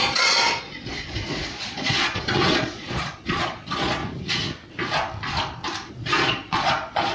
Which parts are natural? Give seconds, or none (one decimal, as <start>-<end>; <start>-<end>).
4.0-5.9